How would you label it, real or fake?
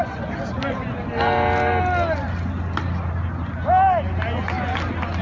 real